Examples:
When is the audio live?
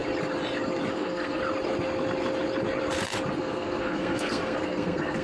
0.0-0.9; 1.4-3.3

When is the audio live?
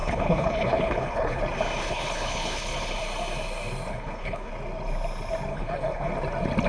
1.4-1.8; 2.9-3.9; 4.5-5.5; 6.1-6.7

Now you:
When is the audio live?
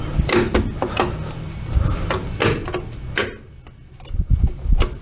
0.0-5.0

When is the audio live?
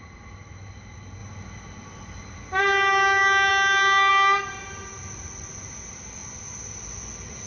0.0-7.5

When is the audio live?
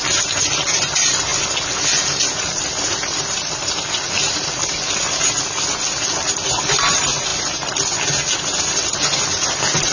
0.0-9.9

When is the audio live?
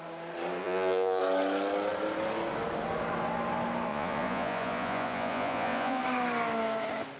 0.0-0.6; 1.2-3.9; 6.0-7.2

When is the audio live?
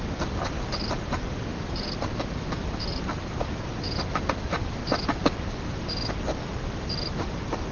0.0-7.7